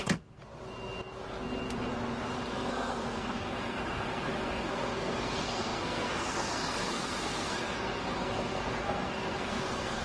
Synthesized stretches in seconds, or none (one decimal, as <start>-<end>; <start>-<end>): 0.0-0.4; 2.5-10.0